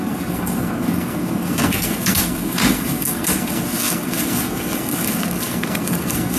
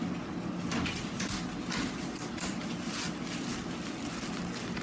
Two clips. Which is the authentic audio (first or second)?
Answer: second